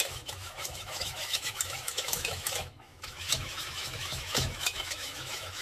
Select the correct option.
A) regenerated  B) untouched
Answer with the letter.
A